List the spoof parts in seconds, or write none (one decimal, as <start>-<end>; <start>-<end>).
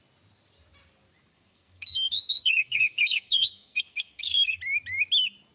1.3-4.6